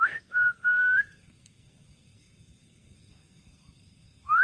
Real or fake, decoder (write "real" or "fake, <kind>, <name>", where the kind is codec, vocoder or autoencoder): fake, codec, SNAC